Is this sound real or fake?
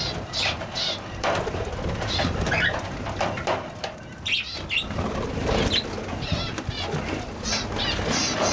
real